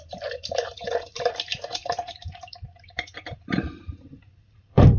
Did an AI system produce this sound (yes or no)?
yes